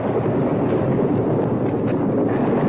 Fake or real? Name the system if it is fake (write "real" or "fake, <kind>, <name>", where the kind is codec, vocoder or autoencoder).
real